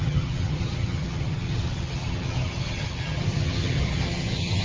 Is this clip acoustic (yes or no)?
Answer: no